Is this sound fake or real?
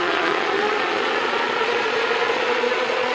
fake